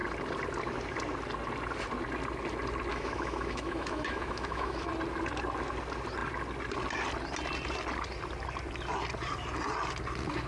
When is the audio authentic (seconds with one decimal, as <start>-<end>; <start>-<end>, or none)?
0.0-2.9; 4.9-10.5